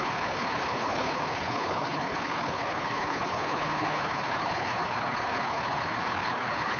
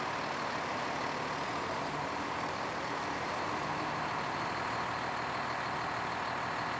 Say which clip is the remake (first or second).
first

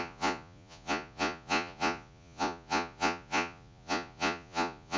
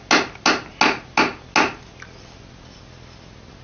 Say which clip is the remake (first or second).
first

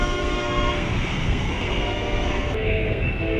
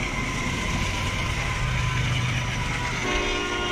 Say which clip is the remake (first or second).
first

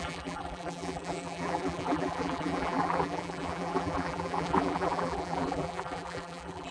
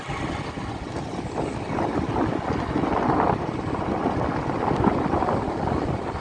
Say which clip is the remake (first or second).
first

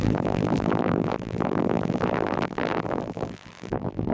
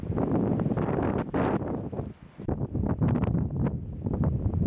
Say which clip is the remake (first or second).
first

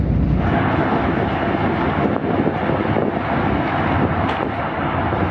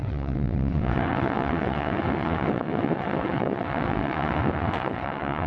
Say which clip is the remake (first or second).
second